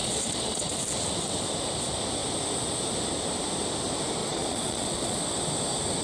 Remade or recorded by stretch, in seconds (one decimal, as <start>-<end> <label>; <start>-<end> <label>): 0.0-0.7 remade; 0.7-4.2 recorded; 4.2-5.2 remade; 5.2-6.0 recorded